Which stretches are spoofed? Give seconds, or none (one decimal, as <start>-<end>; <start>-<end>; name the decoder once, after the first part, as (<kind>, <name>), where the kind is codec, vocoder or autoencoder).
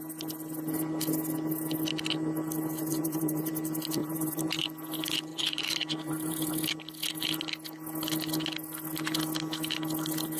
2.8-3.5 (vocoder, BigVGAN v2); 4.0-4.6; 5.3-6.5